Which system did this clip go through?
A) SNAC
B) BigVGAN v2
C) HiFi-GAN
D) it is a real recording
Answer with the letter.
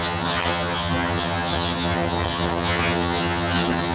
C